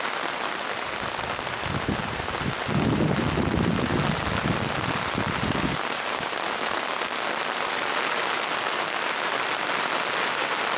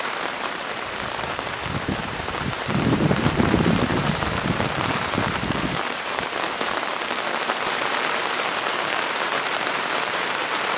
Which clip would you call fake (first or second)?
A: second